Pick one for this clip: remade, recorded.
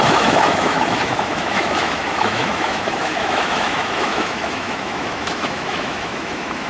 remade